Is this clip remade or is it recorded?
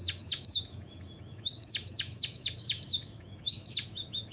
remade